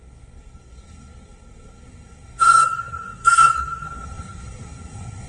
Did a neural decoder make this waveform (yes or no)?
yes